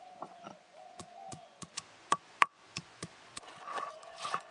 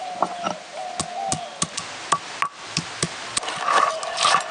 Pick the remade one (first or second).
first